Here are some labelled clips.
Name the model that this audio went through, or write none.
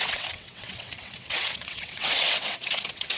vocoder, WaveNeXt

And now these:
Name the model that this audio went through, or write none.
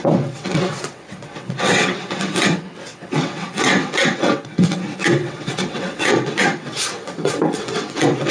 vocoder, WaveNeXt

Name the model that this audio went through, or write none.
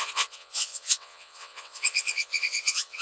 vocoder, WaveNeXt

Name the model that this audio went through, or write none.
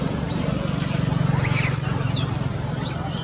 none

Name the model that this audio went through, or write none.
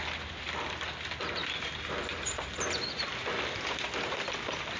none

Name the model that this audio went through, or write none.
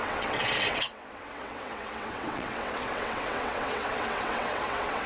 vocoder, WaveNeXt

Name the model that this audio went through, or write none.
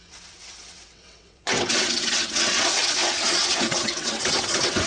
vocoder, WaveNeXt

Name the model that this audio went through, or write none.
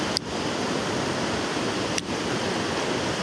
none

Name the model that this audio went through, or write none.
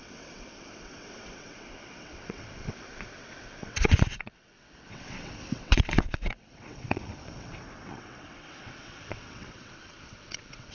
vocoder, WaveNeXt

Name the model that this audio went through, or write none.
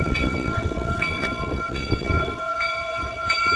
vocoder, WaveNeXt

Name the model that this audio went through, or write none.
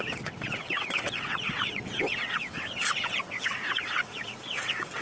vocoder, WaveNeXt